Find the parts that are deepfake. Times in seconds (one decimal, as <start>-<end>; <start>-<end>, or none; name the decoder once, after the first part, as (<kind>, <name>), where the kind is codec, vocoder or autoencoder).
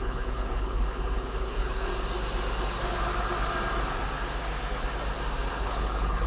0.0-1.9 (codec, HILCodec); 5.5-6.3